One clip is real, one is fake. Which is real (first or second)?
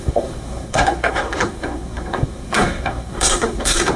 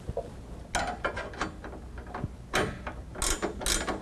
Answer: second